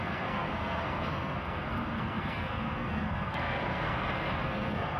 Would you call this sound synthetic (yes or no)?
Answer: yes